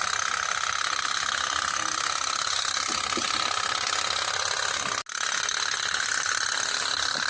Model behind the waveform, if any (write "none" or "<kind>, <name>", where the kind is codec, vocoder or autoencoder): none